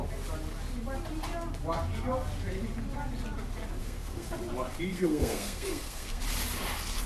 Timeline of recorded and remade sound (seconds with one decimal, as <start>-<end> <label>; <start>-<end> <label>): 0.0-3.8 recorded; 3.8-4.4 remade; 4.4-4.9 recorded; 4.9-6.2 remade; 6.2-7.1 recorded

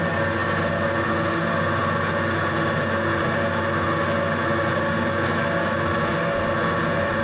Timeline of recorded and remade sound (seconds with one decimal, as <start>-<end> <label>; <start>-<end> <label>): 0.0-7.2 recorded

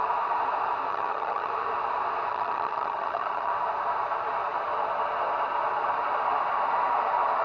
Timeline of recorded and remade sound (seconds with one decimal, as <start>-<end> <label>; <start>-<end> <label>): 0.0-0.9 recorded; 0.9-1.5 remade; 1.5-2.3 recorded; 2.3-3.5 remade; 3.5-7.4 recorded

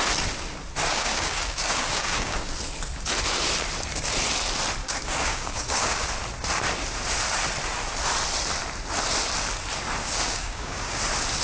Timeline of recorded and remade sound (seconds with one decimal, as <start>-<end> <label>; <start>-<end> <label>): 0.0-0.9 recorded; 0.9-2.5 remade; 2.5-4.8 recorded; 4.8-6.1 remade; 6.1-10.0 recorded; 10.0-11.0 remade; 11.0-11.4 recorded

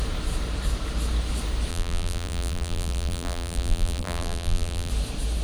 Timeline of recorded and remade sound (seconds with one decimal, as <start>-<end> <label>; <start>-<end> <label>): 0.0-1.7 recorded; 1.7-4.9 remade; 4.9-5.4 recorded